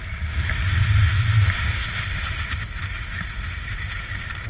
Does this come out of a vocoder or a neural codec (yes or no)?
no